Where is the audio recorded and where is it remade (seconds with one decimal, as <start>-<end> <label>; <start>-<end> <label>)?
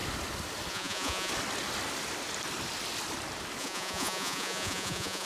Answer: 0.0-0.7 recorded; 0.7-1.3 remade; 1.3-3.6 recorded; 3.6-5.3 remade